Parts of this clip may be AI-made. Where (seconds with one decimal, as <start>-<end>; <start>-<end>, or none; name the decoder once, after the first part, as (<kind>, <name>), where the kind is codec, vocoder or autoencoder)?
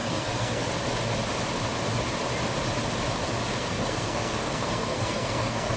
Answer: 0.0-0.7 (codec, SNAC); 3.5-5.8